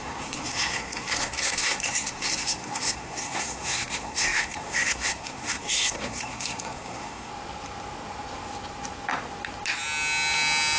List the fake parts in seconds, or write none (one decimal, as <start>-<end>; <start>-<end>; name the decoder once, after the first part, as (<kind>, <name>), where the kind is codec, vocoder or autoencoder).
0.0-7.3 (codec, SNAC)